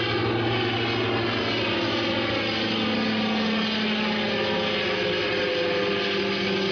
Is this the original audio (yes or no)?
yes